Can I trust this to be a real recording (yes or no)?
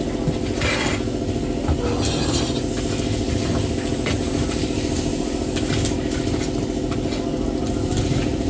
yes